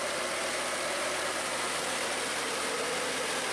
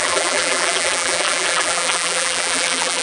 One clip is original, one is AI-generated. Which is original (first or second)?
first